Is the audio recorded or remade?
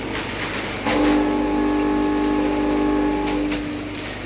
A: recorded